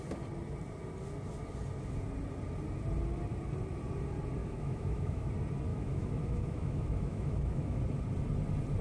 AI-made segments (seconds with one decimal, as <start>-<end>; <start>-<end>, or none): 4.4-5.3; 5.7-7.8